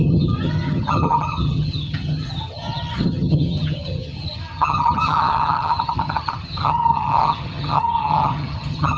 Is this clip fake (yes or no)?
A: yes